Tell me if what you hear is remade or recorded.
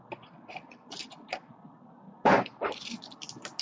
recorded